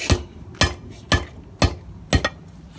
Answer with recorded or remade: recorded